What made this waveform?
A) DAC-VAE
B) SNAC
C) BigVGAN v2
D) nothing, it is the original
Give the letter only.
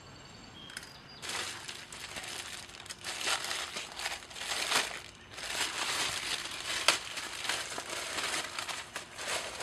D